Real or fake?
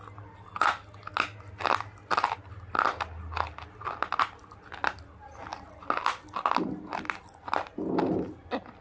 real